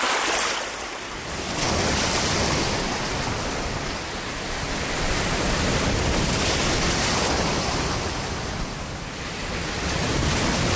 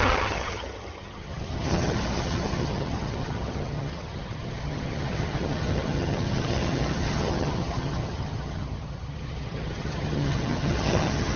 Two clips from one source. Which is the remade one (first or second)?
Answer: second